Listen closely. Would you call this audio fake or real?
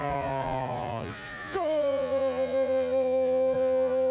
fake